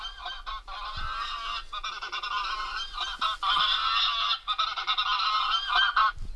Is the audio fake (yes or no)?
no